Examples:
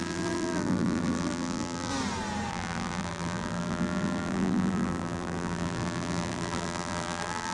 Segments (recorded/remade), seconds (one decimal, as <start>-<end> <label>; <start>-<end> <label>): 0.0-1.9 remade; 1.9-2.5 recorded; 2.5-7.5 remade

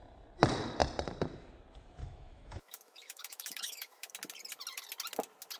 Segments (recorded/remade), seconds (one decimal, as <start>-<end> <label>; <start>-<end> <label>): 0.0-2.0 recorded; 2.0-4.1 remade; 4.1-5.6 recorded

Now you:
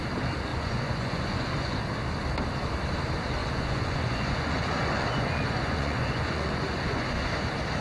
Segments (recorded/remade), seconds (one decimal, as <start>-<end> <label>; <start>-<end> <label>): 0.0-0.5 recorded; 0.5-1.8 remade; 1.8-3.4 recorded; 3.4-7.3 remade; 7.3-7.8 recorded

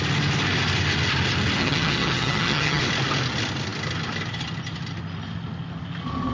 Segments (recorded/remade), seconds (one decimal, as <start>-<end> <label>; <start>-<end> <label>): 0.0-1.6 recorded; 1.6-2.8 remade; 2.8-6.3 recorded

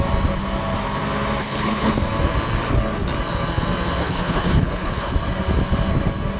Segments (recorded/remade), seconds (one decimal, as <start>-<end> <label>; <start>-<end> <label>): 0.0-1.4 recorded; 1.4-1.9 remade; 1.9-4.0 recorded; 4.0-5.1 remade; 5.1-6.4 recorded

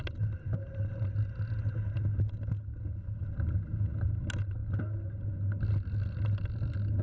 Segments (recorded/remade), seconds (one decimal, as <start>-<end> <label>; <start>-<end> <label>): 0.0-7.0 recorded

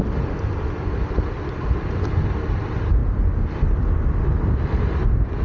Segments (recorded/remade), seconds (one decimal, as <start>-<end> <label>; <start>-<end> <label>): 0.0-5.4 recorded

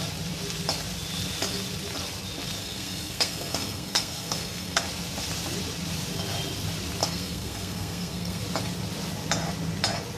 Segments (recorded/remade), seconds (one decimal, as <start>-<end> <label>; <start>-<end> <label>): 0.0-2.6 recorded; 2.6-4.8 remade; 4.8-7.0 recorded; 7.0-8.4 remade; 8.4-10.2 recorded